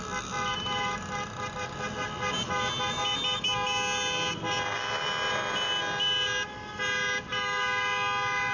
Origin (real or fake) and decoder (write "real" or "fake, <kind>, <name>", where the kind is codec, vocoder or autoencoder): real